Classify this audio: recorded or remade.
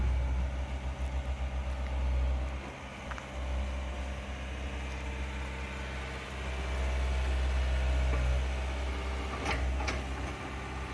recorded